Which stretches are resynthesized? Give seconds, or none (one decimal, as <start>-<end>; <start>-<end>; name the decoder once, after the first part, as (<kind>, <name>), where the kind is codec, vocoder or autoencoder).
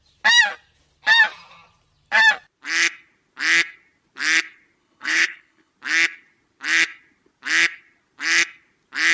4.8-5.7 (codec, HILCodec)